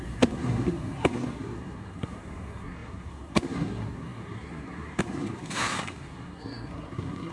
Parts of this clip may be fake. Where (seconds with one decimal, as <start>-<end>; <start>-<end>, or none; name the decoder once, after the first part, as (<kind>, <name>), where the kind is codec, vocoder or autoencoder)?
0.0-7.3 (codec, SNAC)